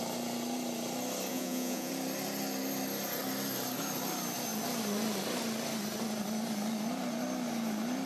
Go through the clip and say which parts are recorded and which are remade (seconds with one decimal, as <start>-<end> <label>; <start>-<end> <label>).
0.0-1.3 recorded; 1.3-1.9 remade; 1.9-8.1 recorded